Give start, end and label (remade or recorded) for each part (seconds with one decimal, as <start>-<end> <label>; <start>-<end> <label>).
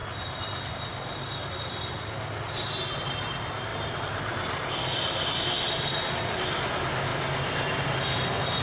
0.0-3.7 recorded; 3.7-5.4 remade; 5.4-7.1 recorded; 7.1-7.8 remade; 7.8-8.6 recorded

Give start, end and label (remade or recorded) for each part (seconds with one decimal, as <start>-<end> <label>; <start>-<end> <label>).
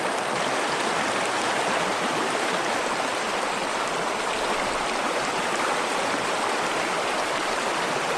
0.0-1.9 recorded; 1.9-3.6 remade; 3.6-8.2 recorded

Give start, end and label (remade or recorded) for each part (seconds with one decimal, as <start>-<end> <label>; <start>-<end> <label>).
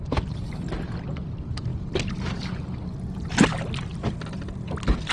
0.0-5.1 recorded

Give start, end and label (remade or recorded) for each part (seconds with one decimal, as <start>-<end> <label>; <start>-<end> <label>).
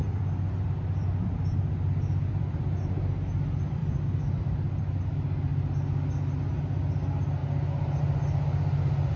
0.0-2.9 remade; 2.9-9.2 recorded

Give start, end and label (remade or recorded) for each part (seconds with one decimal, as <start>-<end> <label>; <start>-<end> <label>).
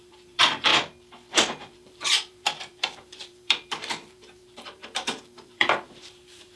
0.0-0.7 remade; 0.7-1.3 recorded; 1.3-6.6 remade